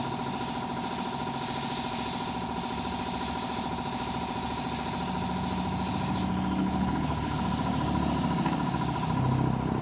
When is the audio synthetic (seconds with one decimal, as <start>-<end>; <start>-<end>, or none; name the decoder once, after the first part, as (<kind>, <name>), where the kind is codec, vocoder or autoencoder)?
6.6-7.4 (codec, HILCodec)